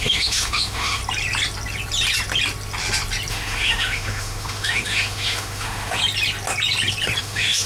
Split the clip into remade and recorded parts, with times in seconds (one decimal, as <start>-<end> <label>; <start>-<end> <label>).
0.0-1.0 remade; 1.0-3.3 recorded; 3.3-6.0 remade; 6.0-7.2 recorded; 7.2-7.7 remade